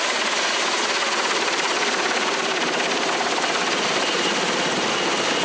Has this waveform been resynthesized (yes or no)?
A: no